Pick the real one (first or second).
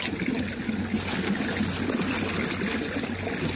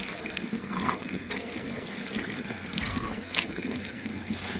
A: first